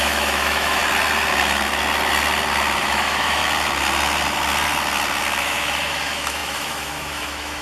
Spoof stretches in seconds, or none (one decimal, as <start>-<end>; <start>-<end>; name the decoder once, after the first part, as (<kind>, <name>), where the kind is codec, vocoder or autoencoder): 0.0-0.8 (autoencoder, DAC-VAE); 2.8-3.4; 5.4-7.6